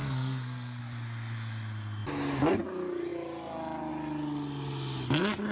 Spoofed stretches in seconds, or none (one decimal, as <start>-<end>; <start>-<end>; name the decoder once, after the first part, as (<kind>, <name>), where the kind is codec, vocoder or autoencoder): 0.0-0.8 (codec, SNAC)